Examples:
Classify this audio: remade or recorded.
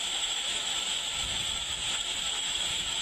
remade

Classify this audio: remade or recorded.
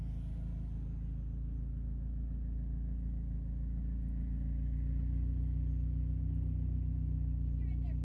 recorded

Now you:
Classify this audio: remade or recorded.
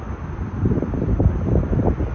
recorded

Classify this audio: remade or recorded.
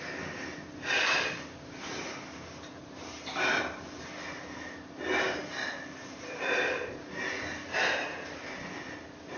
recorded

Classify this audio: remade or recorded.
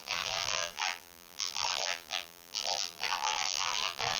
remade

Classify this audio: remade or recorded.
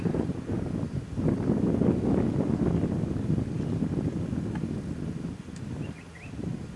recorded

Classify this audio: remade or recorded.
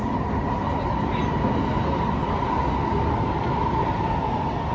recorded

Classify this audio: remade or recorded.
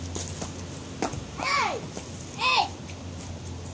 recorded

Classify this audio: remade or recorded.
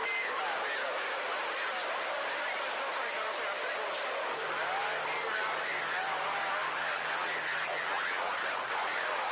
recorded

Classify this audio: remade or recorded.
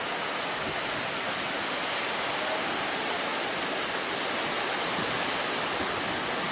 recorded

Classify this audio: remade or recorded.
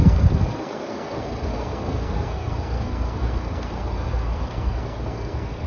remade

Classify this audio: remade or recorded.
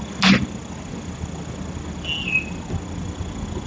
recorded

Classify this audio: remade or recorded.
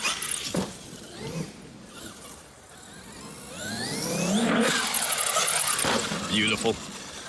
recorded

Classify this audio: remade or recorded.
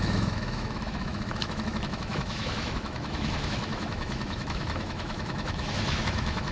remade